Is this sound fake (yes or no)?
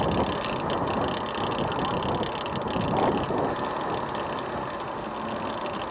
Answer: no